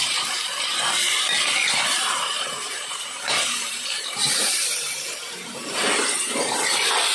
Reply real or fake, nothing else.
fake